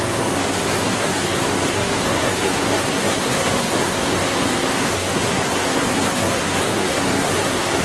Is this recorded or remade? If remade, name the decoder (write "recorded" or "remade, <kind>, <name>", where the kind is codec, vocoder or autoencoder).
remade, codec, SNAC